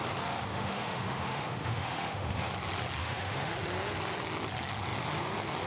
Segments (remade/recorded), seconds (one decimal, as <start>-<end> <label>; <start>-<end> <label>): 0.0-0.5 recorded; 0.5-2.5 remade; 2.5-3.0 recorded; 3.0-3.5 remade; 3.5-5.7 recorded